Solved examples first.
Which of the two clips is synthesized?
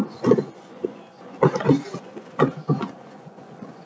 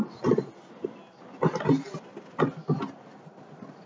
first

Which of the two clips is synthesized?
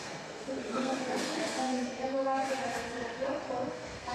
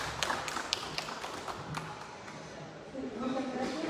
first